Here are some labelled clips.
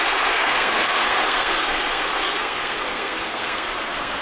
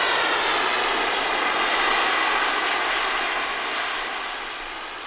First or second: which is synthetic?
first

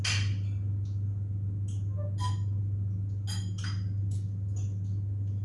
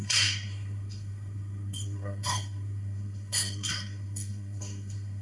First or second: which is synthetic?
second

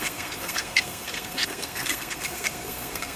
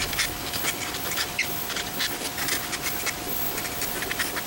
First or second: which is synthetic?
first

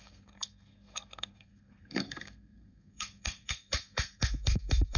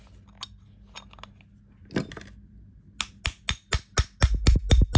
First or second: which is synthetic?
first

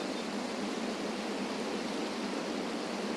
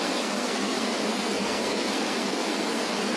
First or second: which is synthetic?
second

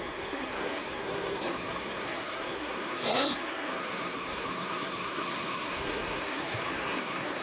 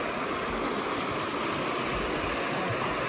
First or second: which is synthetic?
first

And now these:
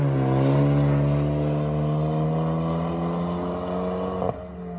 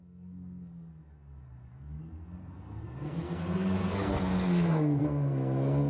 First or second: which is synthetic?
second